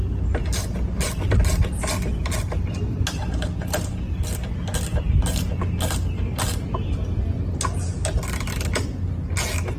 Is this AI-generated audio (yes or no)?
no